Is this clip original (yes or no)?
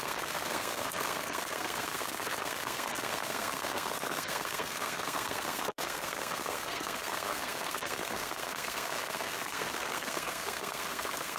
no